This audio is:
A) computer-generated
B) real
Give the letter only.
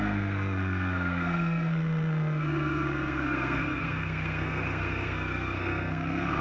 A